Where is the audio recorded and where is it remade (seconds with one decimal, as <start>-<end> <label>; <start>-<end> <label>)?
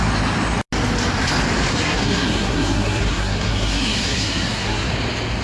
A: 0.0-1.7 recorded; 1.7-4.9 remade; 4.9-5.4 recorded